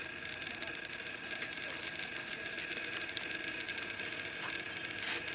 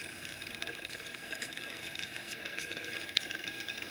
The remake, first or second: second